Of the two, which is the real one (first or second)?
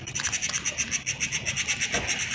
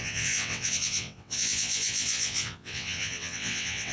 first